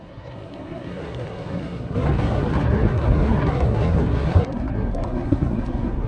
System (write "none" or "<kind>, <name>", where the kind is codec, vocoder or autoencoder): codec, SNAC